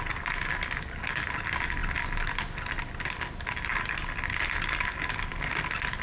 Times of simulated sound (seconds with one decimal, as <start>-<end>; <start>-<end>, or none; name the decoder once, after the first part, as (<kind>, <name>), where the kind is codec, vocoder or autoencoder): none